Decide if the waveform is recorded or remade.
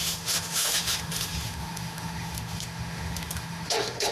remade